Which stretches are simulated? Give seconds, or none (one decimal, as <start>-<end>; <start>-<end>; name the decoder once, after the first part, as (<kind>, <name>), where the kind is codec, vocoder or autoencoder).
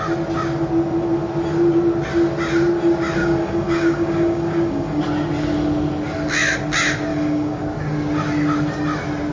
3.2-5.0 (codec, DAC); 7.1-7.6